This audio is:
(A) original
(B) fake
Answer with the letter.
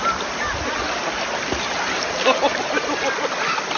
A